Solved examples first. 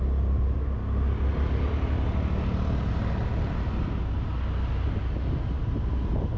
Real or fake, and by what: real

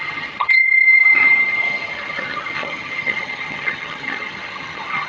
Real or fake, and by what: fake, vocoder, HiFi-GAN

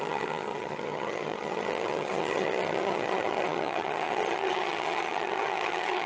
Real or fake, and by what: fake, vocoder, HiFi-GAN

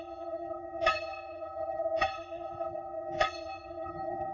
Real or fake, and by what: fake, vocoder, HiFi-GAN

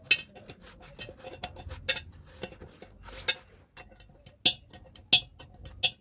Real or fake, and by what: real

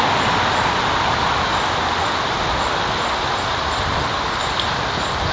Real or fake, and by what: real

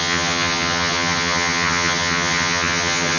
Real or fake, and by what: fake, vocoder, HiFi-GAN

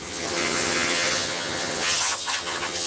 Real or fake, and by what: fake, vocoder, HiFi-GAN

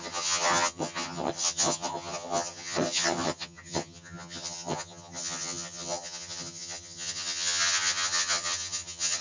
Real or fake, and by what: fake, vocoder, HiFi-GAN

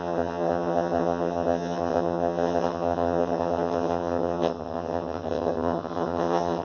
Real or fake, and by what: fake, vocoder, HiFi-GAN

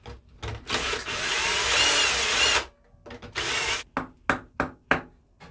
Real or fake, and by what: real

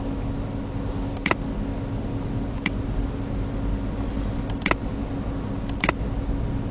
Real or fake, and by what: real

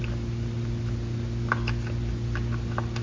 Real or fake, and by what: real